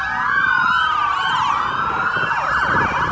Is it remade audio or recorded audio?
recorded